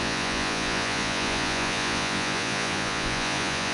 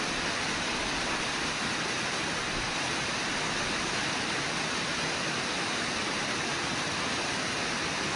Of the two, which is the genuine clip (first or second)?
second